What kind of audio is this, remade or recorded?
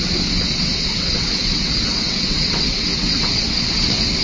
remade